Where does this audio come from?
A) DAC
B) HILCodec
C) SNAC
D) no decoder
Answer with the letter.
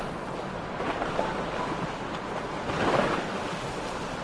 D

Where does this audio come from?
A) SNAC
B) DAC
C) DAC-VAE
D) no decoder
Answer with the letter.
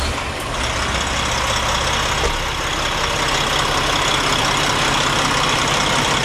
D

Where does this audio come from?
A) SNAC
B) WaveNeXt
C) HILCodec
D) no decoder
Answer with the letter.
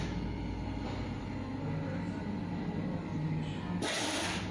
D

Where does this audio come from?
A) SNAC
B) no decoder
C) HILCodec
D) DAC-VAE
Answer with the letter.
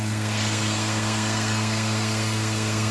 A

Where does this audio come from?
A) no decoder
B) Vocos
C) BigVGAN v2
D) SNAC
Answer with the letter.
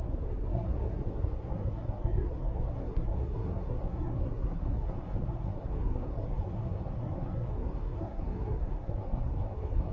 D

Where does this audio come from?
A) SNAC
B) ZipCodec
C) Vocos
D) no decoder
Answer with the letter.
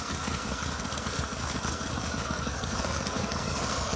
A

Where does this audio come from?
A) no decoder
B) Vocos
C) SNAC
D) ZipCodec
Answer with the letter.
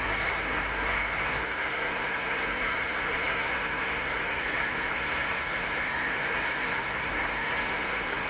C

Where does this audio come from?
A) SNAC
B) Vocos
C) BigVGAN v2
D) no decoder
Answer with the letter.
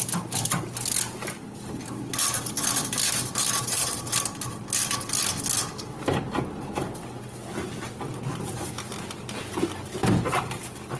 D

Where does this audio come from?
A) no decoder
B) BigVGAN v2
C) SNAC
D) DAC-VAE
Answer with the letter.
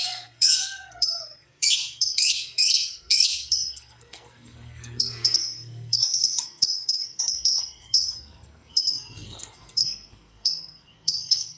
C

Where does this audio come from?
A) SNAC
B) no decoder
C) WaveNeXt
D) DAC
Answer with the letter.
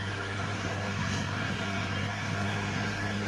A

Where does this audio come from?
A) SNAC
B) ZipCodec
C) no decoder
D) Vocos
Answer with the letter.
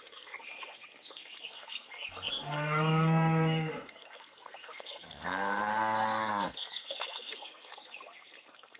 A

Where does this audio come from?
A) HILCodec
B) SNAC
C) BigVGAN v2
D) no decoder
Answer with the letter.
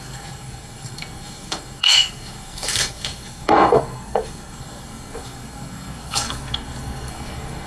B